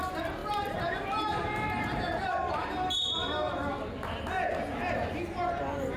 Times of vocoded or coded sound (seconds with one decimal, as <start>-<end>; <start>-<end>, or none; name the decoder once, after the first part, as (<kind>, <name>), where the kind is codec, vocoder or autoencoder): none